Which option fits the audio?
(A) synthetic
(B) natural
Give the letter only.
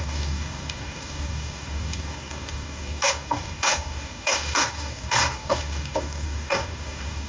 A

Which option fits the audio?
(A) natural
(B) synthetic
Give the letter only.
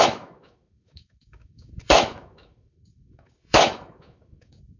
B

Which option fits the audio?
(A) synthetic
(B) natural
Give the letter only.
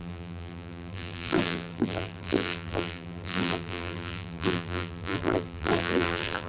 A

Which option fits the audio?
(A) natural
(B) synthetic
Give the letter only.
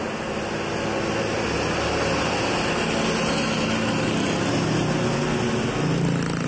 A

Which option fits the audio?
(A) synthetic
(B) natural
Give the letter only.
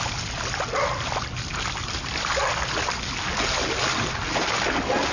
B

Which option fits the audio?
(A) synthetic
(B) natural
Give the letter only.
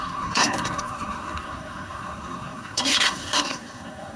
A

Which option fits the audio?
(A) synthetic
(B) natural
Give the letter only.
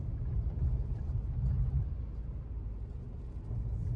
B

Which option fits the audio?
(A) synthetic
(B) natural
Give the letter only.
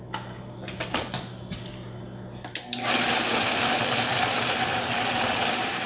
B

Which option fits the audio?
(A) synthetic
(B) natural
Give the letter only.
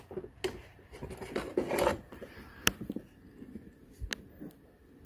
B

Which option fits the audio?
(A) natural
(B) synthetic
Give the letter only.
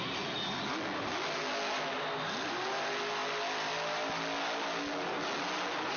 A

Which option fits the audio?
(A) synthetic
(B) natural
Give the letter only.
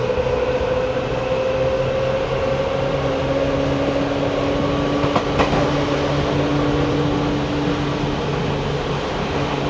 B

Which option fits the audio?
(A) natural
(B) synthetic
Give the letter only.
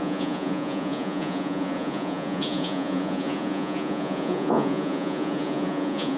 B